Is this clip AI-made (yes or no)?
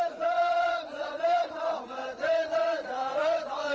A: yes